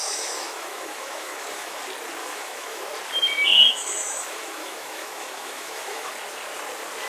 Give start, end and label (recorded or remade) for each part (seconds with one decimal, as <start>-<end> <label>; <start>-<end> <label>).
0.0-1.8 remade; 1.8-2.2 recorded; 2.2-2.8 remade; 2.8-3.5 recorded; 3.5-6.1 remade; 6.1-7.1 recorded